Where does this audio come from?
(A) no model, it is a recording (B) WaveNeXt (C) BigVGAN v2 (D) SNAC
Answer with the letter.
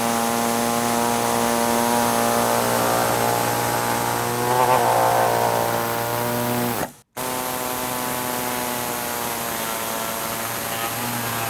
A